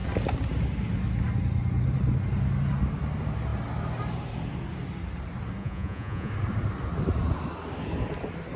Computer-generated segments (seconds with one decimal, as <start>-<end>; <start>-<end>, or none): 5.6-6.3